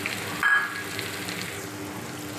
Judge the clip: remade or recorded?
recorded